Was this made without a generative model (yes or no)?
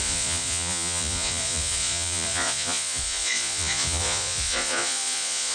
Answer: no